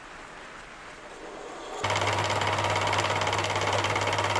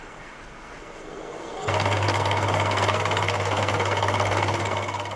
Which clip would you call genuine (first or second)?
first